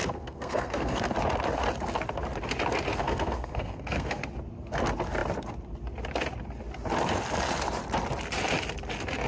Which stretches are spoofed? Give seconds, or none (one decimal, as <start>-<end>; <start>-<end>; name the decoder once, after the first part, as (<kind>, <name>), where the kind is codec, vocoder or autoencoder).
0.0-1.0 (codec, SNAC); 3.0-4.2